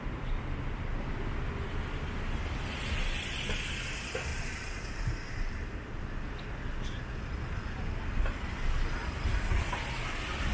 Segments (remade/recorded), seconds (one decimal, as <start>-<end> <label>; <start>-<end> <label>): 0.0-4.3 recorded; 4.3-5.8 remade; 5.8-9.0 recorded; 9.0-9.5 remade; 9.5-10.5 recorded